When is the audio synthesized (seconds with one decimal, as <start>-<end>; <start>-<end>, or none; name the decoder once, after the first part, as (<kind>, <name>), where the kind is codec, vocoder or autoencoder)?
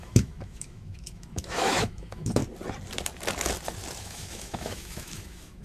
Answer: 0.0-2.4 (autoencoder, DAC-VAE); 4.0-5.6